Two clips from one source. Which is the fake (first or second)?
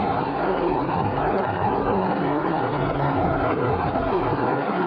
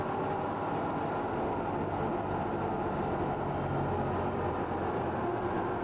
first